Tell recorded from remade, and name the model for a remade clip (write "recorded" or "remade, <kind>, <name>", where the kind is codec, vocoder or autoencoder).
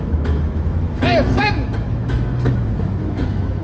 remade, autoencoder, DAC-VAE